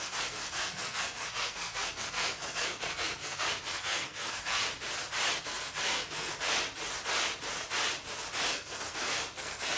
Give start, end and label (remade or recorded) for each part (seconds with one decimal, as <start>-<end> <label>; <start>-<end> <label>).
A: 0.0-4.6 remade; 4.6-5.4 recorded; 5.4-6.3 remade; 6.3-8.5 recorded; 8.5-9.8 remade